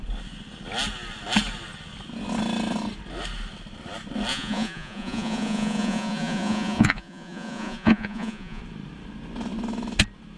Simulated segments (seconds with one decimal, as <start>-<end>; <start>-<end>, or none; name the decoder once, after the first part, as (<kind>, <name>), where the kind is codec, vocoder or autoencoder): 4.3-8.6 (vocoder, Vocos)